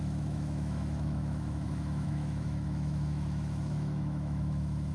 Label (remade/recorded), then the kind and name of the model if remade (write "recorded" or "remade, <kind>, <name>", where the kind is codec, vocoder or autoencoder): remade, autoencoder, DAC-VAE